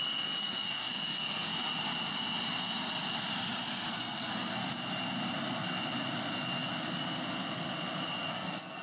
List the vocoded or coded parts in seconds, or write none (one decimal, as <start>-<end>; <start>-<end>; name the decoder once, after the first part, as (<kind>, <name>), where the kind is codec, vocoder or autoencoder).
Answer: 0.0-1.5 (codec, SNAC); 3.9-4.6; 8.3-8.8